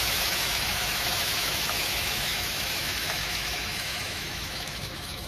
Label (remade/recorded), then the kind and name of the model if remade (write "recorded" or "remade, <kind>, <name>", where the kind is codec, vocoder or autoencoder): remade, autoencoder, DAC-VAE